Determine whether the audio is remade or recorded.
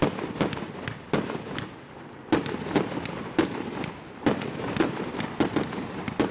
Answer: recorded